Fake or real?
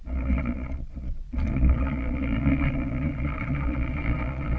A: fake